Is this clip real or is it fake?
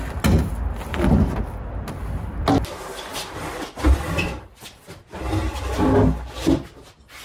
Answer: real